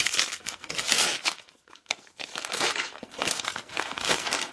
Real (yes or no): no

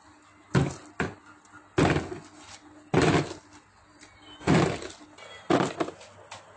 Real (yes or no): yes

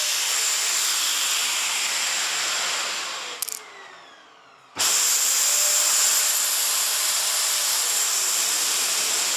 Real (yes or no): yes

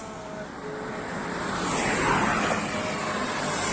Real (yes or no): yes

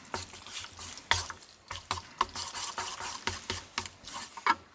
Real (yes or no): yes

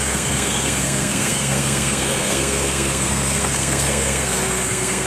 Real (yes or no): no